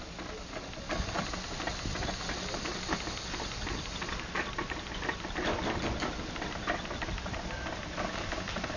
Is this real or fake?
real